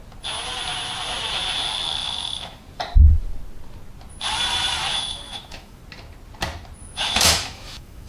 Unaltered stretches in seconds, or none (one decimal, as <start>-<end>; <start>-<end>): 0.0-2.0; 2.6-4.9; 5.8-6.8